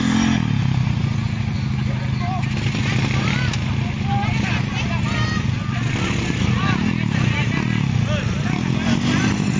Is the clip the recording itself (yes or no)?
yes